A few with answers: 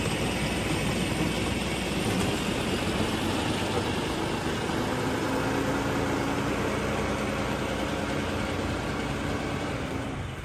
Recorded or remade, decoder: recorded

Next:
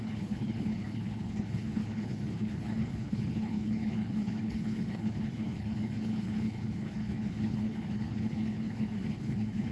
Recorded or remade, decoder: remade, codec, HILCodec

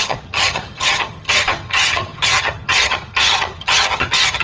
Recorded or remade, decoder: remade, vocoder, HiFi-GAN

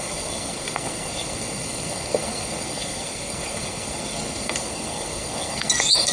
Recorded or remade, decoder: remade, codec, SNAC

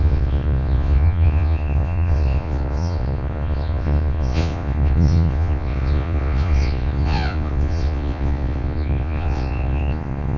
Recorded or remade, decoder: remade, vocoder, Vocos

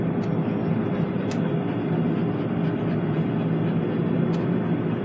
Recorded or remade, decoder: recorded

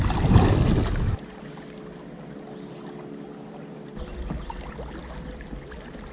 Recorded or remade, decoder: recorded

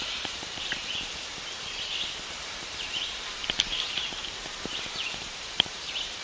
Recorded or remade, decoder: remade, vocoder, BigVGAN v2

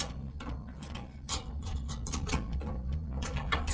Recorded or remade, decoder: remade, vocoder, Vocos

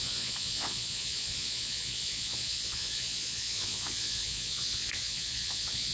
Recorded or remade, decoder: remade, vocoder, Vocos